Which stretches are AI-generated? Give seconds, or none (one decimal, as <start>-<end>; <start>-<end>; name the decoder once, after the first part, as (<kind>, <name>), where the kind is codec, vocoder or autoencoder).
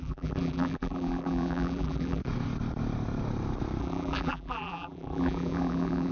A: 0.0-2.2 (vocoder, BigVGAN v2); 3.8-6.1